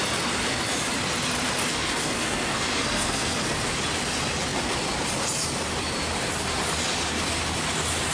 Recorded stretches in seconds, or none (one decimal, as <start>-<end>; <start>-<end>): 0.0-1.7; 3.4-8.1